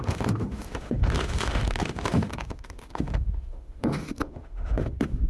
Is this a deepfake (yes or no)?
yes